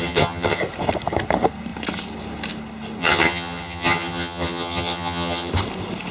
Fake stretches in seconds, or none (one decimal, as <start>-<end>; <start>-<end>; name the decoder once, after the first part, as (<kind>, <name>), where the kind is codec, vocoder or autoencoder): 0.0-0.6 (vocoder, HiFi-GAN); 3.0-5.5